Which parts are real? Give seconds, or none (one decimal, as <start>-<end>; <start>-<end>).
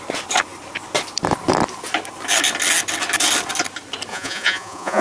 0.0-4.1